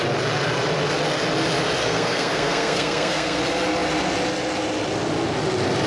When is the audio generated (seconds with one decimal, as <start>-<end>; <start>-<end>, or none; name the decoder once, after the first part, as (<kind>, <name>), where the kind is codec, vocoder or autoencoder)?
1.8-3.4 (codec, SNAC)